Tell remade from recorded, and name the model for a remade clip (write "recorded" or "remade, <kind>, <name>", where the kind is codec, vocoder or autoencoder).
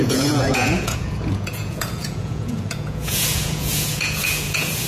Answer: remade, vocoder, Vocos